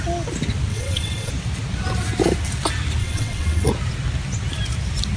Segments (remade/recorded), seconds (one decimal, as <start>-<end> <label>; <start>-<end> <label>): 0.0-0.7 recorded; 0.7-1.3 remade; 1.3-3.0 recorded; 3.0-3.7 remade; 3.7-5.2 recorded